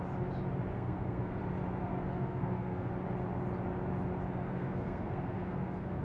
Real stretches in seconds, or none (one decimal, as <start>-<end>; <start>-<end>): 0.0-0.7; 1.4-1.8; 2.9-4.5